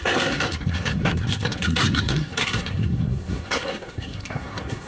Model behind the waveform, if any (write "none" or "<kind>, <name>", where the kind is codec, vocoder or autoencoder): codec, SNAC